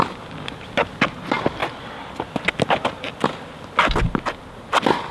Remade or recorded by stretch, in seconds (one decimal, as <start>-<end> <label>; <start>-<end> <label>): 0.0-5.1 recorded